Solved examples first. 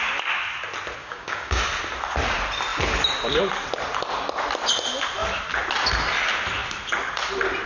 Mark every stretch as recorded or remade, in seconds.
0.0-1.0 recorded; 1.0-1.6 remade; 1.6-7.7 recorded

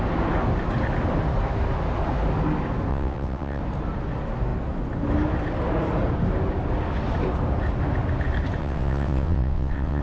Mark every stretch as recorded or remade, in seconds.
0.0-2.9 recorded; 2.9-3.6 remade; 3.6-8.6 recorded; 8.6-10.0 remade

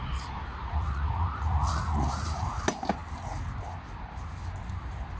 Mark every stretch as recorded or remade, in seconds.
0.0-0.5 recorded; 0.5-2.6 remade; 2.6-5.2 recorded

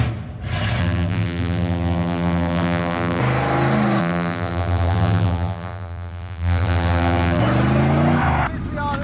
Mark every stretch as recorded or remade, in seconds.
0.0-0.8 recorded; 0.8-3.2 remade; 3.2-4.0 recorded; 4.0-7.4 remade; 7.4-9.0 recorded

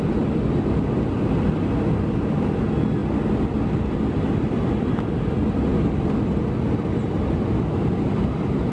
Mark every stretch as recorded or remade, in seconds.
0.0-8.7 recorded